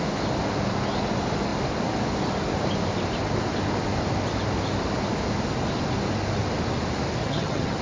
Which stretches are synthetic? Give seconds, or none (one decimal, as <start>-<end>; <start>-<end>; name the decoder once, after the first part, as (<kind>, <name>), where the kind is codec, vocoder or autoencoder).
7.2-7.8 (vocoder, HiFi-GAN)